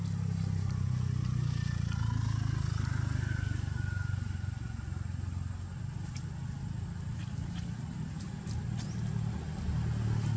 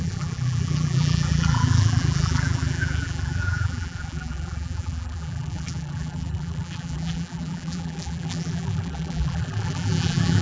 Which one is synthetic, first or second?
second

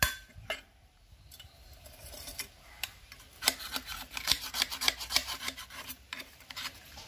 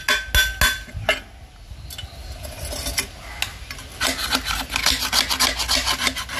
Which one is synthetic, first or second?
first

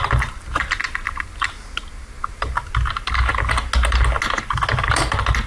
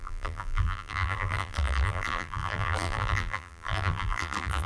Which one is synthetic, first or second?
second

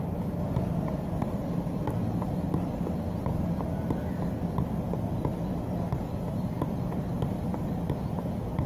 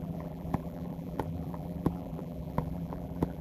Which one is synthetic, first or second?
second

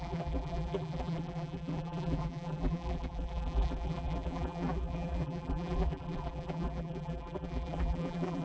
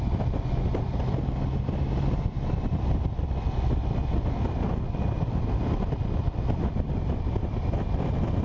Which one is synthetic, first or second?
first